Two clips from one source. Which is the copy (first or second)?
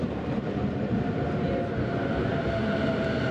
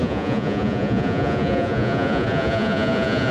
second